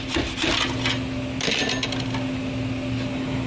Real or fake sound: real